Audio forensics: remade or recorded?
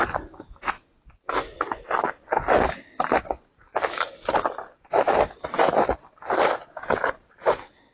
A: recorded